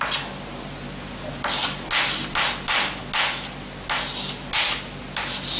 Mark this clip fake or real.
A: real